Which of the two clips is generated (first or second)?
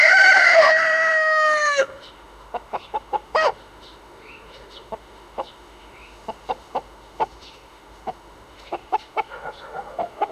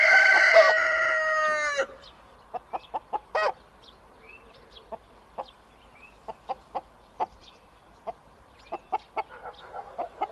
first